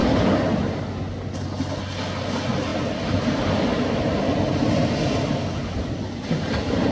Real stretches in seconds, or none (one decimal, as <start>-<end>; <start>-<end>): 0.0-6.9